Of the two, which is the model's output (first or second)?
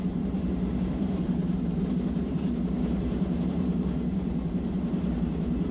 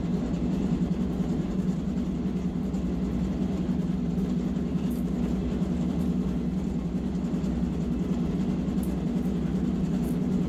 first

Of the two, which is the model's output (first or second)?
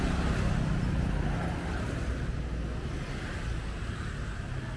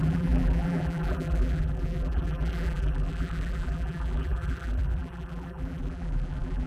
second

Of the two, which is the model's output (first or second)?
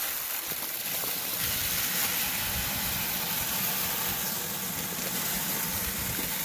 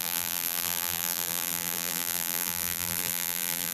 second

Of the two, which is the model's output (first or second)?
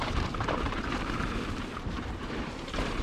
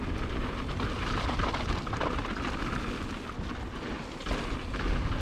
first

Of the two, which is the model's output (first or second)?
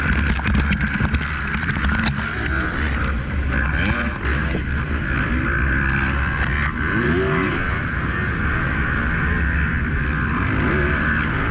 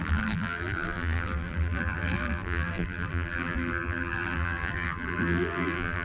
second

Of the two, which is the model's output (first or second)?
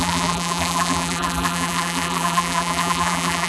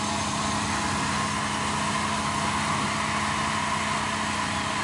first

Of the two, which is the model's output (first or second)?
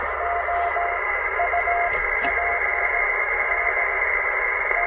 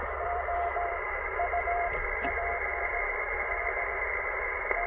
second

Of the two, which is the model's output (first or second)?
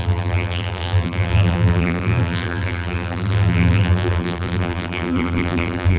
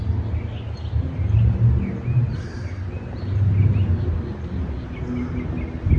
first